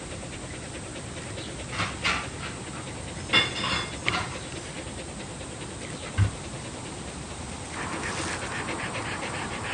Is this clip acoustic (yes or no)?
yes